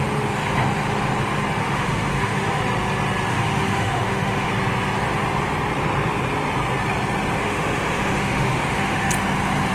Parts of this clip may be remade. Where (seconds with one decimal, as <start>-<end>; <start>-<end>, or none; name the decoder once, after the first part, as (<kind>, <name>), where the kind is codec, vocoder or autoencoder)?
1.6-2.6 (autoencoder, DAC-VAE); 3.3-4.5; 7.4-9.1